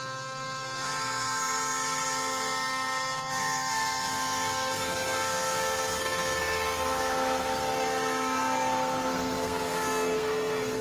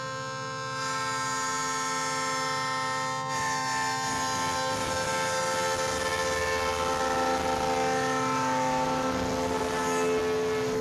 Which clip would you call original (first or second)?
second